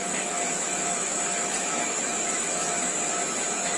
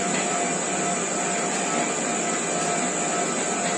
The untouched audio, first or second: second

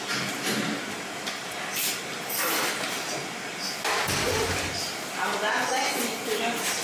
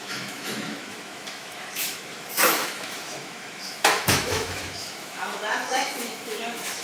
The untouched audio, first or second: first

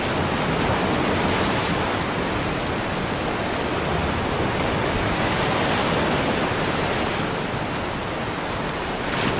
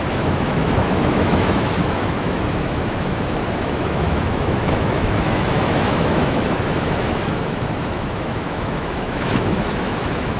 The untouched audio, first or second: first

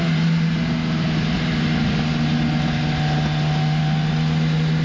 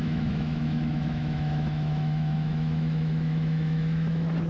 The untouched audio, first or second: first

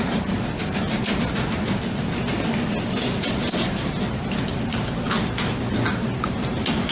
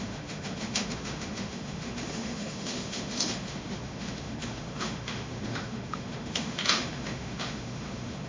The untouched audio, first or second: first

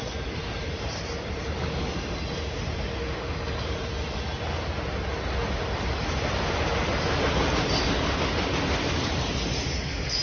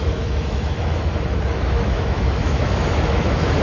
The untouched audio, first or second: first